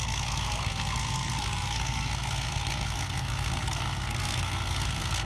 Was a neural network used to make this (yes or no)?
yes